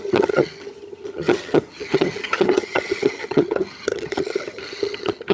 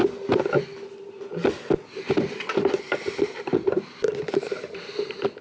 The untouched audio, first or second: second